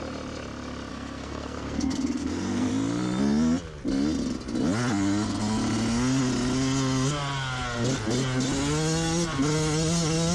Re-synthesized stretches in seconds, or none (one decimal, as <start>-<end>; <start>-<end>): 0.9-2.7